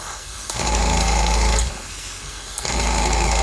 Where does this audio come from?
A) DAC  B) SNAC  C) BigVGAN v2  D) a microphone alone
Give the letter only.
B